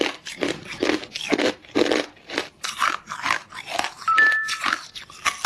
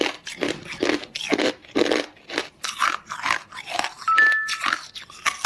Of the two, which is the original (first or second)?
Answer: second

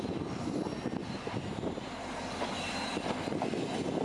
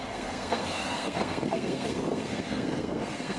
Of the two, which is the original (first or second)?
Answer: first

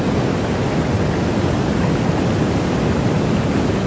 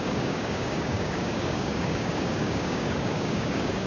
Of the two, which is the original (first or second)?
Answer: first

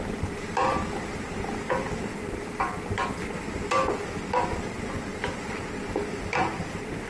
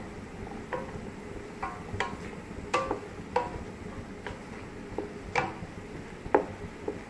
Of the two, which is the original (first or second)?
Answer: second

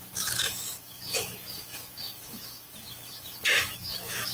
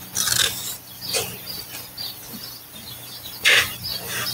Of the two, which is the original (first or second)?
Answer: second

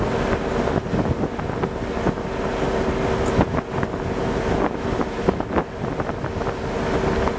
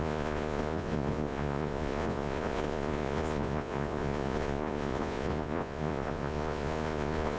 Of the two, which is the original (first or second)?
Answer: first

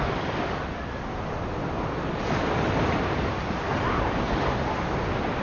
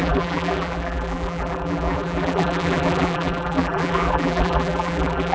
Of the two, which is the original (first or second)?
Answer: first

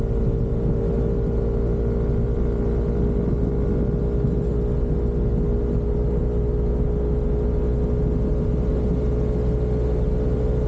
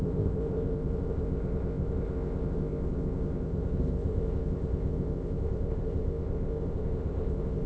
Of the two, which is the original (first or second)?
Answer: first